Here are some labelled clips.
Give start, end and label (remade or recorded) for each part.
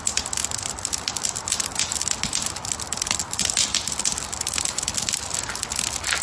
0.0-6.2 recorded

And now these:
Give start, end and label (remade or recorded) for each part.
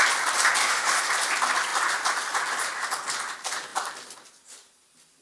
0.0-0.6 recorded; 0.6-1.1 remade; 1.1-5.2 recorded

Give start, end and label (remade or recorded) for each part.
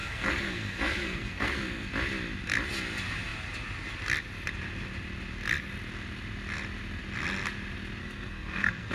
0.0-1.9 remade; 1.9-8.0 recorded; 8.0-8.9 remade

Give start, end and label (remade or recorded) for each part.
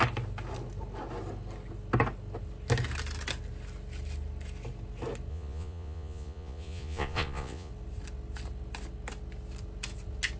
0.0-5.3 recorded; 5.3-7.7 remade; 7.7-10.4 recorded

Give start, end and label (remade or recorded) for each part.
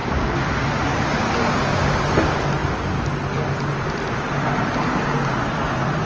0.0-6.1 recorded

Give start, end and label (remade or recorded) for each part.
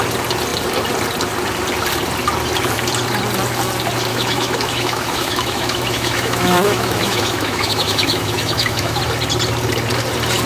0.0-4.1 recorded; 4.1-9.0 remade; 9.0-10.5 recorded